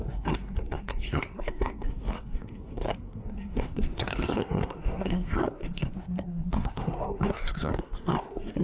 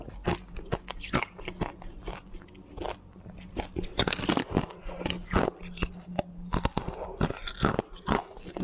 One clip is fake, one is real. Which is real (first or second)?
second